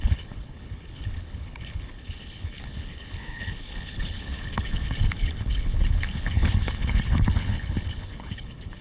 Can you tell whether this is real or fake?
fake